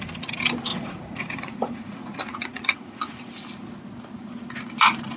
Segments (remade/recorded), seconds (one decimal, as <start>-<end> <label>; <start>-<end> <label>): 0.0-0.7 recorded; 0.7-3.3 remade; 3.3-5.2 recorded